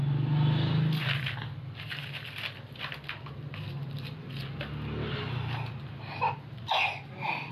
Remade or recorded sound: recorded